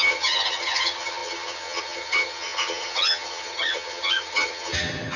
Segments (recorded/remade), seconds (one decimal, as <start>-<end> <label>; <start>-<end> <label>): 0.0-5.2 remade